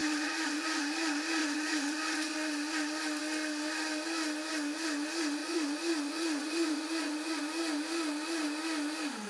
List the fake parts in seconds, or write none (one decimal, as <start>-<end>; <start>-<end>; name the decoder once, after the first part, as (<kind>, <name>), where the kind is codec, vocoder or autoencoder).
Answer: 0.0-0.8 (vocoder, Vocos); 1.4-2.5; 5.4-7.4